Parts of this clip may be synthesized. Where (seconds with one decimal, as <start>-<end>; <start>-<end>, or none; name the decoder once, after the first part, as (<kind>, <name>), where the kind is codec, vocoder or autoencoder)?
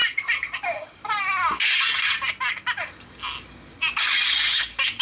none